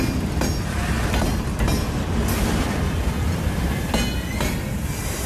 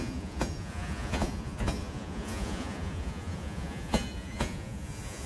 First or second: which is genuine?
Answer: first